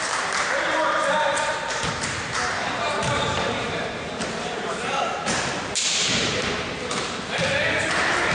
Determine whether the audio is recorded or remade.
remade